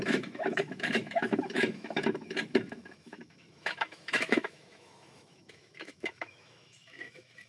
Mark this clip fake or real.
fake